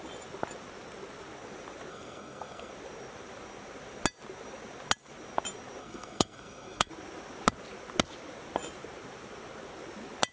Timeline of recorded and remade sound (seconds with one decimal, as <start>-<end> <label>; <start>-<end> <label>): 0.0-1.9 recorded; 1.9-2.7 remade; 2.7-5.8 recorded; 5.8-6.9 remade; 6.9-10.3 recorded